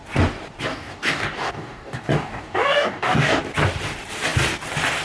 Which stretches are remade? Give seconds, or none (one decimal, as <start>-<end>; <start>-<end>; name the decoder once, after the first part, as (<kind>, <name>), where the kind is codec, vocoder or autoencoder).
0.7-3.4 (codec, DAC)